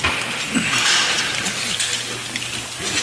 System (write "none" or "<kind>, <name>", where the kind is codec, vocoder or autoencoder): none